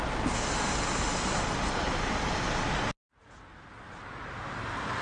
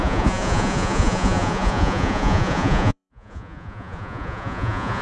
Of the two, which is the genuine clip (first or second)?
first